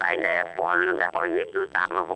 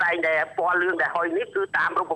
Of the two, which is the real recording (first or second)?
second